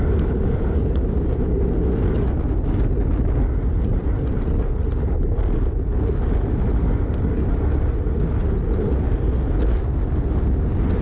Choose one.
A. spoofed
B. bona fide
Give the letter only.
B